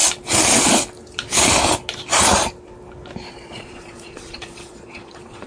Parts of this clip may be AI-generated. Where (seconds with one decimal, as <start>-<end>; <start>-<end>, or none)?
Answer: 3.3-5.5